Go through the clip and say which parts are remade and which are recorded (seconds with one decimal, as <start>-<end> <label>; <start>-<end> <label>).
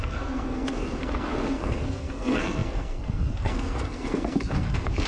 0.0-5.1 remade